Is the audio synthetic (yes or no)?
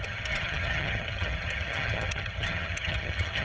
yes